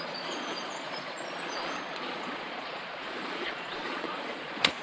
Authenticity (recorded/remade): remade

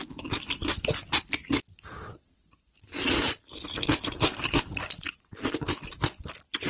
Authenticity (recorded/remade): recorded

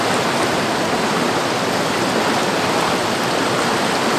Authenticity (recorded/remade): recorded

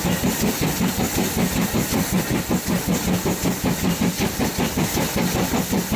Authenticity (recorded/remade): recorded